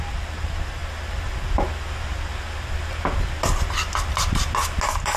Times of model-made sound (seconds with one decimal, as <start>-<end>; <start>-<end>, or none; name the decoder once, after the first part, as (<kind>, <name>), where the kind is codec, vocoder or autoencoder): none